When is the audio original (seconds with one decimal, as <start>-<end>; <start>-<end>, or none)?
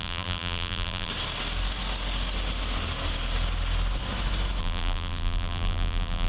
1.1-4.6